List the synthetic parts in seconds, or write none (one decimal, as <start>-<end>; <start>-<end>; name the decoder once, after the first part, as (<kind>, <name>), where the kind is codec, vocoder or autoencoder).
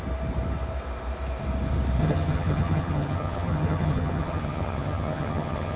2.0-5.8 (vocoder, HiFi-GAN)